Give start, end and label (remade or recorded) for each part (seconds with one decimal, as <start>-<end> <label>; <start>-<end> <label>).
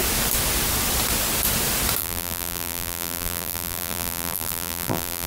0.0-2.0 recorded; 2.0-5.3 remade